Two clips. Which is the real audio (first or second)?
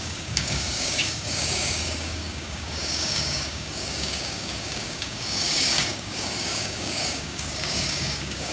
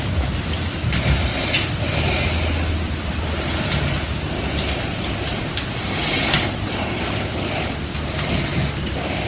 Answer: second